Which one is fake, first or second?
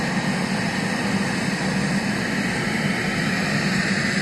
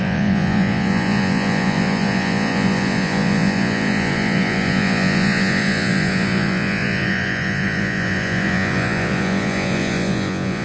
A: second